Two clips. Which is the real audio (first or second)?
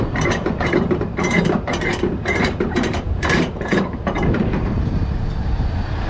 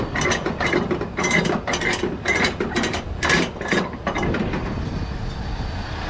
second